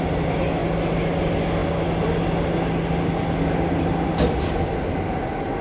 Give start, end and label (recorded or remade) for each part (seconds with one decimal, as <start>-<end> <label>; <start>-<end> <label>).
0.0-5.6 recorded